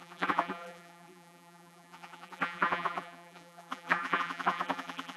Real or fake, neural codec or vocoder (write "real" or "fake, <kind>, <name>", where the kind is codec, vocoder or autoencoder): fake, vocoder, BigVGAN v2